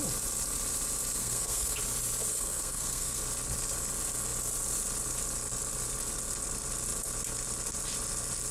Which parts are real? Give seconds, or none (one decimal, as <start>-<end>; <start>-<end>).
0.0-1.2; 1.8-2.3; 3.2-8.5